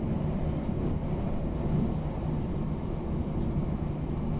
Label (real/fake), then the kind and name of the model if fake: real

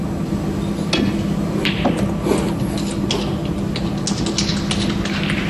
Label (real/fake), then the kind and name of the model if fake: real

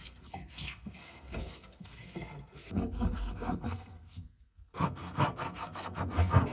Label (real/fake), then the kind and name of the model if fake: fake, codec, SNAC